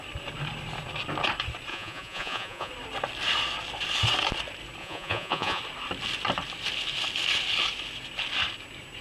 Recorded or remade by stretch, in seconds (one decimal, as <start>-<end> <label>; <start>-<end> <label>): 0.0-1.7 recorded; 1.7-2.7 remade; 2.7-4.8 recorded; 4.8-5.6 remade; 5.6-9.0 recorded

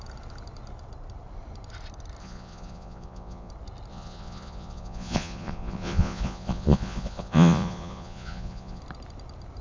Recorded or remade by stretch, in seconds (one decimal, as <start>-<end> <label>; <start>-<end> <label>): 0.0-2.2 recorded; 2.2-3.5 remade; 3.5-3.9 recorded; 3.9-8.8 remade; 8.8-9.6 recorded

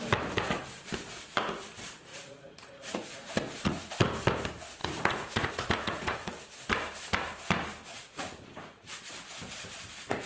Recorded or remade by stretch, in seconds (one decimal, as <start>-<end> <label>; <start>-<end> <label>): 0.0-2.1 recorded; 2.1-3.9 remade; 3.9-4.8 recorded; 4.8-6.3 remade; 6.3-7.9 recorded; 7.9-9.0 remade; 9.0-10.3 recorded